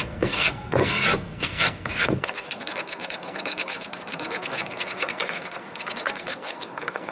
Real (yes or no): no